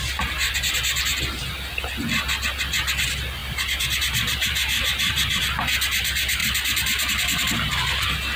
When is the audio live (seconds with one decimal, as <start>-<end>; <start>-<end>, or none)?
0.0-3.4; 5.4-8.4